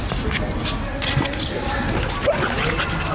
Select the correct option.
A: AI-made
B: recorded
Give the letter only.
B